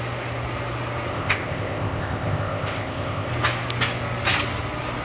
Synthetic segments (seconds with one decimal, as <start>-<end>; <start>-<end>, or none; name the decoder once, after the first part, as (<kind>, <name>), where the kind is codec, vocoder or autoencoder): 1.1-3.3 (codec, ZipCodec)